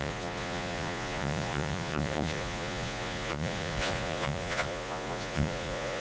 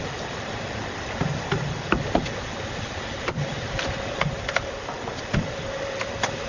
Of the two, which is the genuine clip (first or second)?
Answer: second